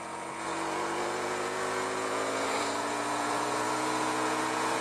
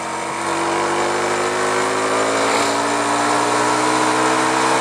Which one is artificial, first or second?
first